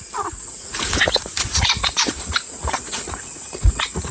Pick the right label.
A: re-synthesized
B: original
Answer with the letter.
A